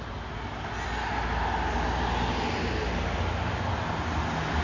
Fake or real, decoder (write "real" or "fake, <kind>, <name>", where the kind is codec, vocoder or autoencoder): real